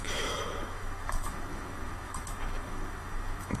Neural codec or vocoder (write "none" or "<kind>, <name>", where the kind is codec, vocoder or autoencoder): autoencoder, DAC-VAE